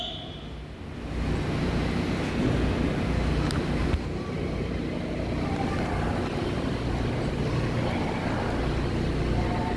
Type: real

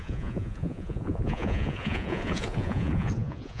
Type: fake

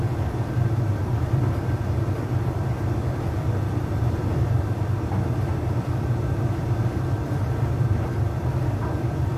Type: fake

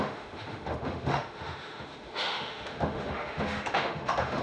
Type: fake